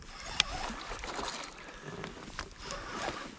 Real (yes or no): yes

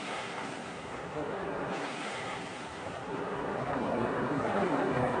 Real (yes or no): no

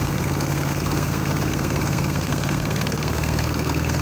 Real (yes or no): no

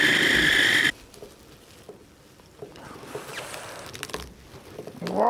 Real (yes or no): yes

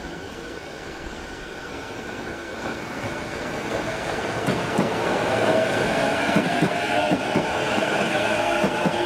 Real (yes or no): no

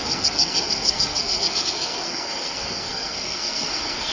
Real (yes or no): no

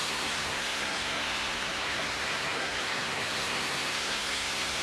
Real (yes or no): no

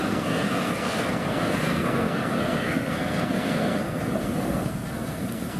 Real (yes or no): no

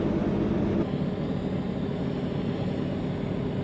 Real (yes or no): yes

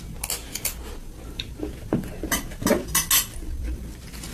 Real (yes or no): yes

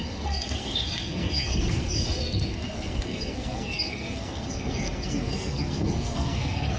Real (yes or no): no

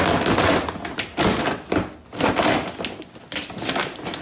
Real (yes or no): yes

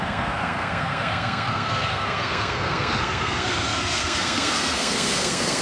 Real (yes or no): no